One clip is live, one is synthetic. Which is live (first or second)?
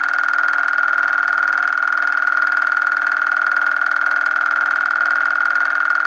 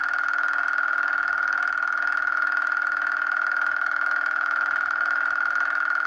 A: first